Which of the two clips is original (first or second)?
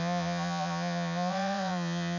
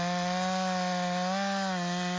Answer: second